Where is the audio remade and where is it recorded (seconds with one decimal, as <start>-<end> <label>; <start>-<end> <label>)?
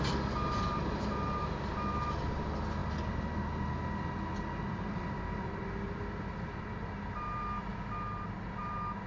0.0-9.1 recorded